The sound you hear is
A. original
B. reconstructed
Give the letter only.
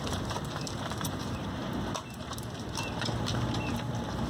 B